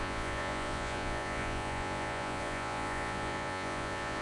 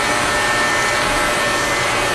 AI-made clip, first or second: first